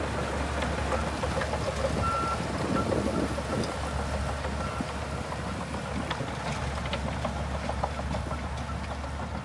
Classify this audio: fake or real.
real